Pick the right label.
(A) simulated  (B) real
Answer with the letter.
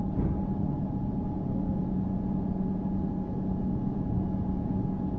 A